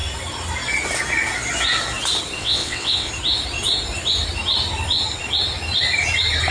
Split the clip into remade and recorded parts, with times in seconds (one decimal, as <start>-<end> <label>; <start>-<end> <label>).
0.0-2.4 recorded; 2.4-3.1 remade; 3.1-6.5 recorded